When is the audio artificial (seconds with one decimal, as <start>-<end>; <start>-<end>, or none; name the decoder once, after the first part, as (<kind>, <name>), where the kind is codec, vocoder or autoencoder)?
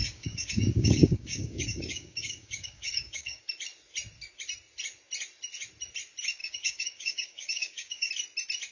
0.0-3.4 (codec, DAC); 6.4-8.1